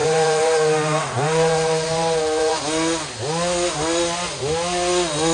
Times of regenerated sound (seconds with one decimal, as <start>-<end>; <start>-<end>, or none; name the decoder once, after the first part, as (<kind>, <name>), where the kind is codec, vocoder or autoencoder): 0.0-2.6 (vocoder, BigVGAN v2)

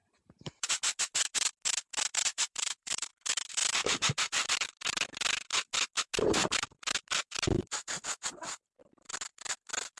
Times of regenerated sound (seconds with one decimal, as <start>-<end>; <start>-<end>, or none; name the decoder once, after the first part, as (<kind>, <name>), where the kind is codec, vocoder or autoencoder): 0.0-0.7 (vocoder, BigVGAN v2); 2.3-3.1